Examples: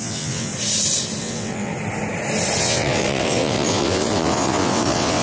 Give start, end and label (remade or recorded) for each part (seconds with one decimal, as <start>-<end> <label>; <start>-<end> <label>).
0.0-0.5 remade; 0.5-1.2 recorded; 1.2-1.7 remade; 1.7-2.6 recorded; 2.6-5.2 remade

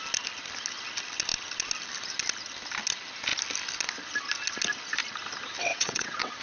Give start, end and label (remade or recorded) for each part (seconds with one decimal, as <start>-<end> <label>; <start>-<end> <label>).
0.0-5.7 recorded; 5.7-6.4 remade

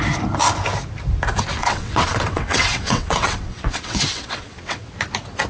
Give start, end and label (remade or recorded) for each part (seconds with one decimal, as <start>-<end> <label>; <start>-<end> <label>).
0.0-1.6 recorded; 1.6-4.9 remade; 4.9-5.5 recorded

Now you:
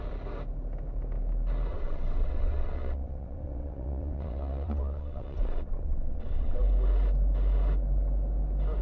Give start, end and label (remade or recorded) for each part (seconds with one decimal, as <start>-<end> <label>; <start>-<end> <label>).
0.0-1.7 recorded; 1.7-6.6 remade; 6.6-8.8 recorded